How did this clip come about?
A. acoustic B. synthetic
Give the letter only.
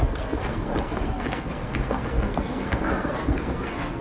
B